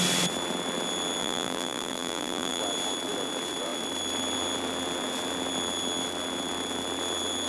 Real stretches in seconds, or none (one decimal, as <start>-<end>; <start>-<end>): 0.0-1.2; 2.6-7.5